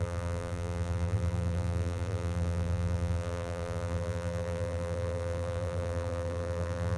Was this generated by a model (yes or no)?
yes